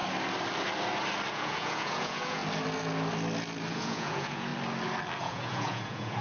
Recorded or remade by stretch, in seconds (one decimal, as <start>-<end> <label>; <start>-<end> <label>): 0.0-1.3 recorded; 1.3-2.4 remade; 2.4-3.7 recorded; 3.7-4.5 remade; 4.5-5.2 recorded; 5.2-6.2 remade